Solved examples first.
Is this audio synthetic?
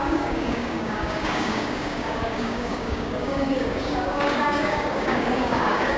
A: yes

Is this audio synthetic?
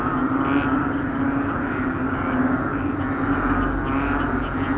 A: no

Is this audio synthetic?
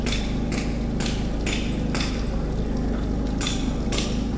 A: no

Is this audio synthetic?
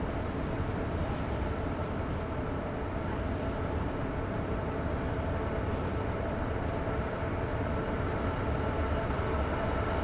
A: no